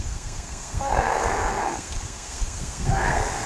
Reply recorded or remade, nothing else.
remade